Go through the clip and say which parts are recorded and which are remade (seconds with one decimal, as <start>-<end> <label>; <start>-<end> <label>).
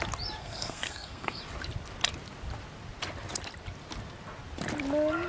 0.0-0.4 recorded; 0.4-1.4 remade; 1.4-5.3 recorded